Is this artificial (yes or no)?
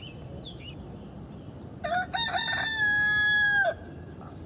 no